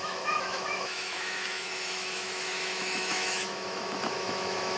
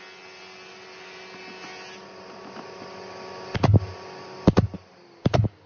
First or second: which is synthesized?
first